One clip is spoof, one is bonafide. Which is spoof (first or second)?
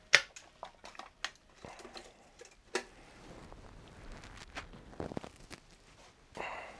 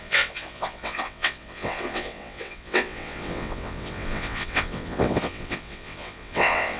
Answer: second